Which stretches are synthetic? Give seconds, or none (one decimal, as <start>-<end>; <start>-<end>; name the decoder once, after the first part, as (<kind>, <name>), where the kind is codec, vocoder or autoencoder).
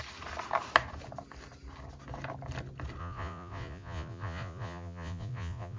3.0-5.8 (vocoder, Vocos)